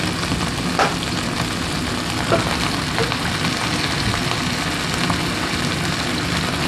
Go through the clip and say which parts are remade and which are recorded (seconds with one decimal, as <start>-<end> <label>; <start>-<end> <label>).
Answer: 0.0-6.7 recorded